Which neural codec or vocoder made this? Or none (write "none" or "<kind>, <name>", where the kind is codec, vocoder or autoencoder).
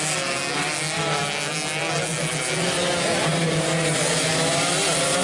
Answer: none